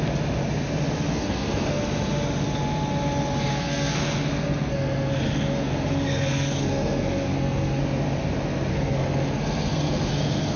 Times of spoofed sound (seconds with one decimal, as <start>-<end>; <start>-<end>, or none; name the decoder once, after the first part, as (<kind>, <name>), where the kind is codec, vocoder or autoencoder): 1.1-1.8 (codec, SNAC); 3.5-7.8; 8.7-10.6